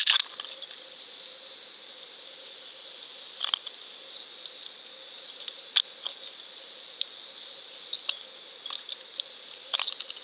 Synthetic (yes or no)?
no